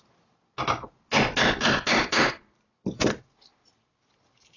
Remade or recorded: recorded